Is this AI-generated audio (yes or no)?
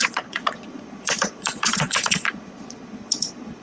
yes